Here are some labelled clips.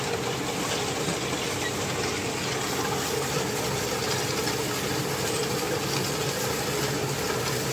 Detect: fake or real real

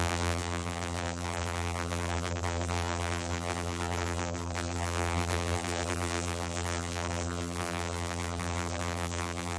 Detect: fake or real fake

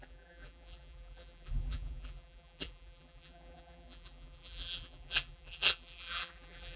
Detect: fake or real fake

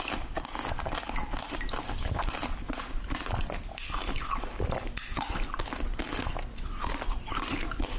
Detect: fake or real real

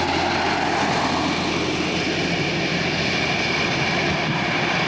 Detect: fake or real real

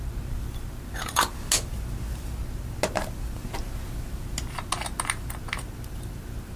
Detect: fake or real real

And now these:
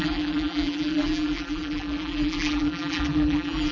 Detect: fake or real fake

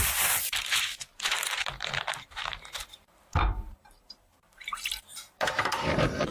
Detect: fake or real fake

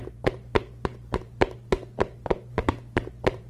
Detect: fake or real fake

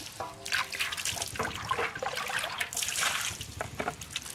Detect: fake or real real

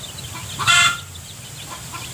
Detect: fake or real real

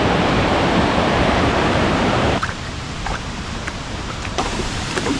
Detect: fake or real fake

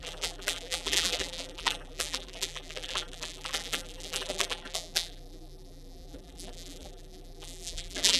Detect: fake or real fake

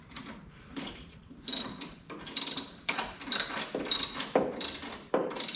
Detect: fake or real fake